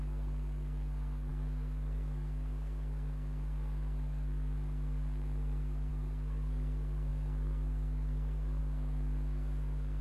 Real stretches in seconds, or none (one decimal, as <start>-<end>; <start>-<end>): none